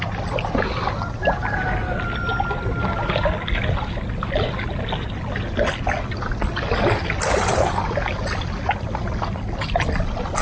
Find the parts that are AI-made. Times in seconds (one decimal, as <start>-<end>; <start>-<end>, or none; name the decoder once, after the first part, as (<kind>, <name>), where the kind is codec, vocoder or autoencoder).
none